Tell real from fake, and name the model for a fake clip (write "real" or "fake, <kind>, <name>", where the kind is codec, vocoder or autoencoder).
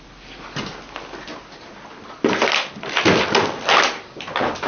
real